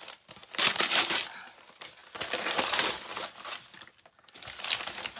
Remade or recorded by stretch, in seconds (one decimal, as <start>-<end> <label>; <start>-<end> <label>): 0.0-0.4 remade; 0.4-1.0 recorded; 1.0-2.0 remade; 2.0-2.5 recorded; 2.5-5.2 remade